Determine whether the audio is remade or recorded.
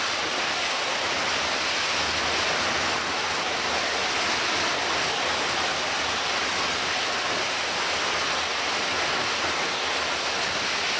recorded